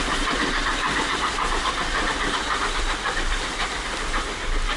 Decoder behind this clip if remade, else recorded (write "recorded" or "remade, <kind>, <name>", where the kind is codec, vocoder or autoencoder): remade, vocoder, BigVGAN v2